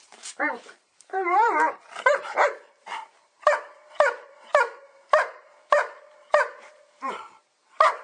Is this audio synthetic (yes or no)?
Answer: yes